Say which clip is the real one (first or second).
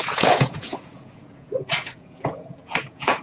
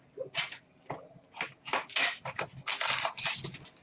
second